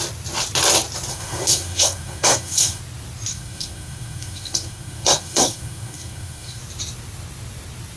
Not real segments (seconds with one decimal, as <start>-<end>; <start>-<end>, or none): 1.1-2.8; 3.3-6.6